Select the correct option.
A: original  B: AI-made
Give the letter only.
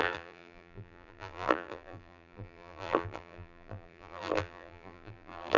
B